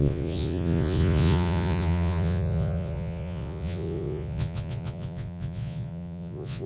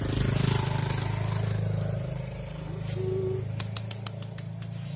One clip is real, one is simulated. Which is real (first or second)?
second